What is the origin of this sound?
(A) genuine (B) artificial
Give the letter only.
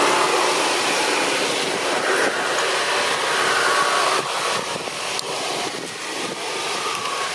A